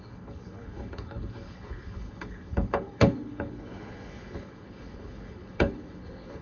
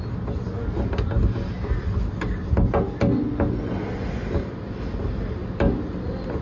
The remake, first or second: first